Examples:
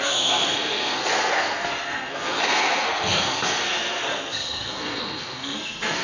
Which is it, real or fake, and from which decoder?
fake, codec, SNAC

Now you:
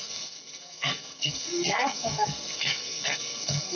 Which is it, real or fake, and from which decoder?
fake, codec, SNAC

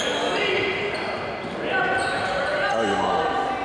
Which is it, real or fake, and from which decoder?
real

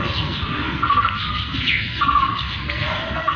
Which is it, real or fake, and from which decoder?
fake, codec, SNAC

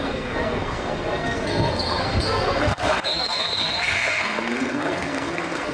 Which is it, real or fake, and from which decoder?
fake, codec, SNAC